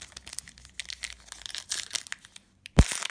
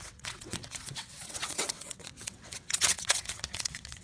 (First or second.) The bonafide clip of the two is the first